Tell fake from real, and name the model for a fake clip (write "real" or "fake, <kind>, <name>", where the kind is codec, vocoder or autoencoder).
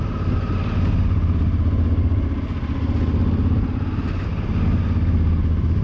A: real